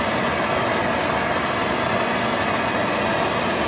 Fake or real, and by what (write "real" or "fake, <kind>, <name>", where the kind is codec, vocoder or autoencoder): real